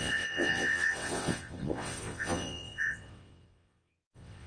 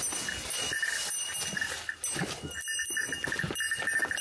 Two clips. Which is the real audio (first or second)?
second